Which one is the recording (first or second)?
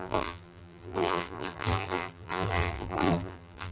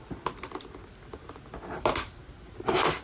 second